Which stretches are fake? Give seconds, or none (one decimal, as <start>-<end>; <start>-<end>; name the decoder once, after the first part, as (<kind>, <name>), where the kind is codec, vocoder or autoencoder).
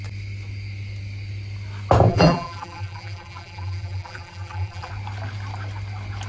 2.1-4.9 (vocoder, BigVGAN v2)